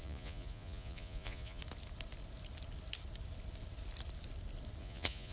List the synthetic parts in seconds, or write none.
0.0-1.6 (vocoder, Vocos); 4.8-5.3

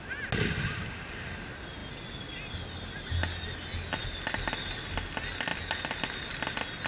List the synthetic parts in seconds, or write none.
none

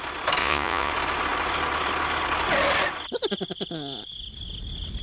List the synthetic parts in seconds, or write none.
0.4-0.9 (vocoder, Vocos)

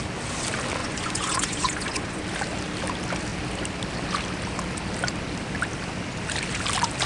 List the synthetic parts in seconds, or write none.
0.8-2.2 (vocoder, Vocos)

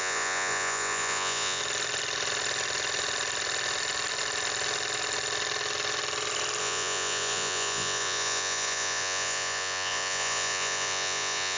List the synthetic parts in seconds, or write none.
0.0-1.6 (vocoder, Vocos); 6.6-11.6